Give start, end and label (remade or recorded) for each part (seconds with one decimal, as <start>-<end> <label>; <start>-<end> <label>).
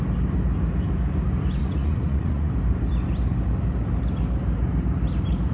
0.0-1.6 recorded; 1.6-2.5 remade; 2.5-5.5 recorded